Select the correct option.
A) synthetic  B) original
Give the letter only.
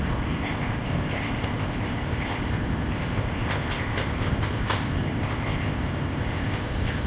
A